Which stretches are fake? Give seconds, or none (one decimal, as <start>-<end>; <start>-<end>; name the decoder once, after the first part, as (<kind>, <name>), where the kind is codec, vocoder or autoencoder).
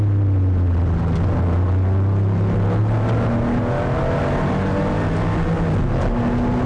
none